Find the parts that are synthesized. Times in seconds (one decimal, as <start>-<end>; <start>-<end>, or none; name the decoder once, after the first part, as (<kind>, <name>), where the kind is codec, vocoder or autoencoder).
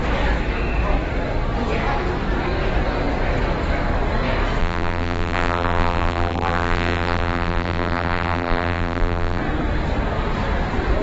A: 4.6-9.4 (vocoder, BigVGAN v2)